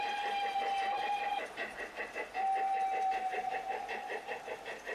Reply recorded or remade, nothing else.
recorded